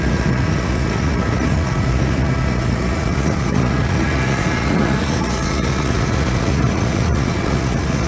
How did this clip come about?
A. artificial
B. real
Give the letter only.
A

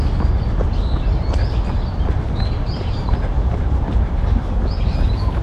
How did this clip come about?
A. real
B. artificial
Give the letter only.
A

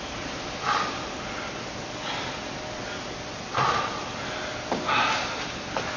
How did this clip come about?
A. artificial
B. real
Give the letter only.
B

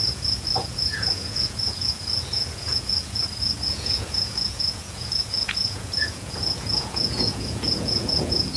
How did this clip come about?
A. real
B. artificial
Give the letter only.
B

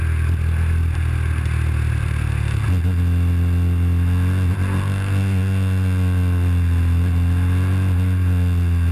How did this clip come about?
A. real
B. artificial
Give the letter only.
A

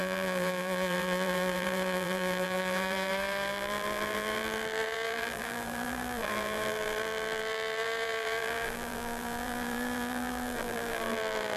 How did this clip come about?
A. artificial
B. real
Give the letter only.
A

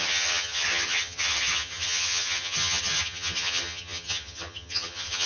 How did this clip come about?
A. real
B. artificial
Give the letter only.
B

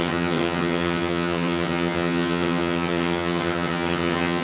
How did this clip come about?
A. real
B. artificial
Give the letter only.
B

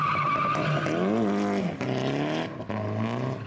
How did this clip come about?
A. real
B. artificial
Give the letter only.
A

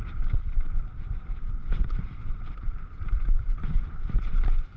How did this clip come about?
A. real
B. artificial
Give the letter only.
B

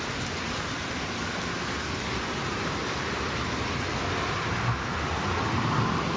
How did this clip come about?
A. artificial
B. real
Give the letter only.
B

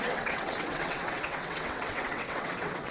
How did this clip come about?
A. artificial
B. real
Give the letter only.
A